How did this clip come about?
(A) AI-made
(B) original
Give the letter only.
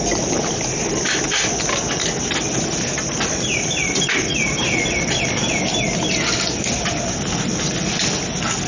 B